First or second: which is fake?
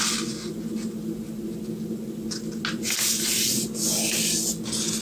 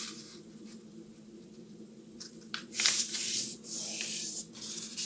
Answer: second